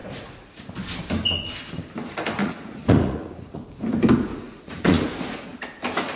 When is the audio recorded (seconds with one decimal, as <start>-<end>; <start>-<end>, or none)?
0.7-2.4; 3.6-4.3; 5.1-6.2